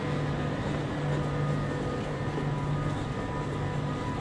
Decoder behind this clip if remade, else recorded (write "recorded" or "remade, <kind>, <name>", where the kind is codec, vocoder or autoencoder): recorded